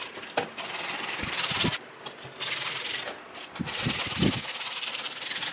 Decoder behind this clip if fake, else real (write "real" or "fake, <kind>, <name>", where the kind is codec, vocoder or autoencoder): real